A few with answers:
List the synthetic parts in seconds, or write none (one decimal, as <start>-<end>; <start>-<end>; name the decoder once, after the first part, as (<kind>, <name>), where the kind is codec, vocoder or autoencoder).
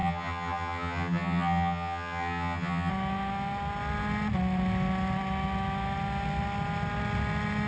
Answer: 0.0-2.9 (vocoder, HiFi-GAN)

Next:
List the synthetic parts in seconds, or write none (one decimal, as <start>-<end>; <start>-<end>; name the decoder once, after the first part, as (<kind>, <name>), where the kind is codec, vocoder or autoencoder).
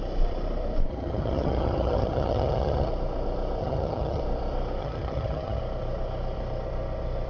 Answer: 0.9-2.9 (vocoder, HiFi-GAN); 3.6-4.2; 4.8-5.6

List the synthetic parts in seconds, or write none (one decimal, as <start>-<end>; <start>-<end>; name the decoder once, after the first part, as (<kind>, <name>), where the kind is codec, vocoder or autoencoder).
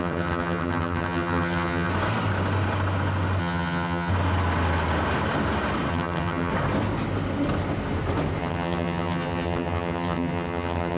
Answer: 0.0-1.9 (vocoder, HiFi-GAN); 3.4-4.1; 5.9-6.5; 8.4-11.0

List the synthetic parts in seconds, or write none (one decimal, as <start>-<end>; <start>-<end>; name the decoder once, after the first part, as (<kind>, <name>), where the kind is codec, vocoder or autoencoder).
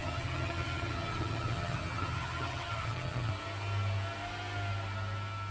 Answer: 0.0-3.3 (vocoder, HiFi-GAN)